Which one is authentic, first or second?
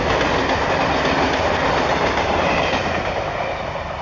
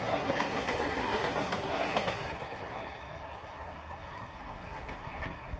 first